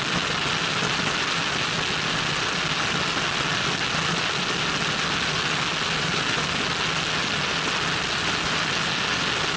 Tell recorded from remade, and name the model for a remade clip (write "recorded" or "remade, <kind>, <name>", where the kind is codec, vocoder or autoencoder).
recorded